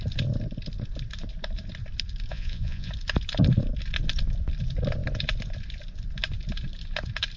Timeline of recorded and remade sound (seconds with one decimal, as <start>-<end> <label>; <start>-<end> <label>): 0.0-2.3 recorded; 2.3-2.9 remade; 2.9-7.4 recorded